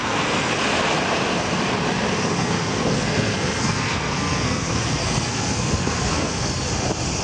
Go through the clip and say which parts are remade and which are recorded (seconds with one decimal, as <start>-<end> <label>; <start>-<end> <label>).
0.0-0.5 remade; 0.5-2.4 recorded; 2.4-6.7 remade; 6.7-7.2 recorded